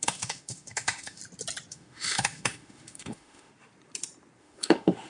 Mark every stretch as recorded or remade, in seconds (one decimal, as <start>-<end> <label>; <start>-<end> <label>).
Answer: 0.0-1.2 remade; 1.2-1.7 recorded; 1.7-3.5 remade; 3.5-4.4 recorded; 4.4-5.1 remade